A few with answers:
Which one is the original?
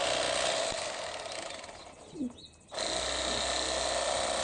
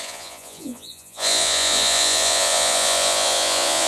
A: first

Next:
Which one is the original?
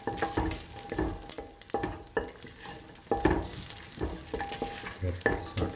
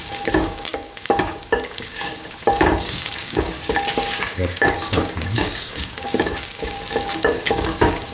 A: first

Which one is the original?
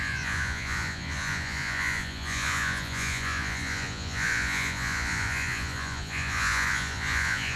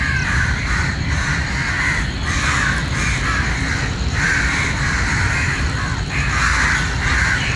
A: second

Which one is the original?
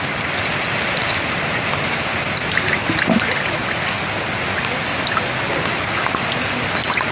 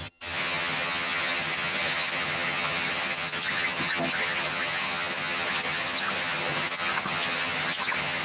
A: first